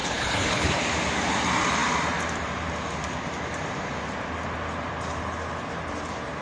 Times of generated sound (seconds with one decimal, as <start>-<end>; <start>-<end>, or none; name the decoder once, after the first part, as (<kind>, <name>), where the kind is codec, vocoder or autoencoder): 0.0-0.8 (codec, HILCodec)